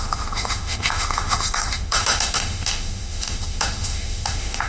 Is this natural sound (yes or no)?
no